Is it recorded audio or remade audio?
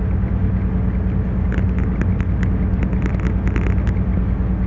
recorded